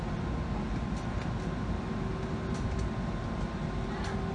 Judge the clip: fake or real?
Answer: real